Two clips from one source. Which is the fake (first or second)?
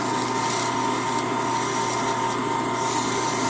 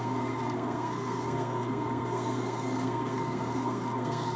second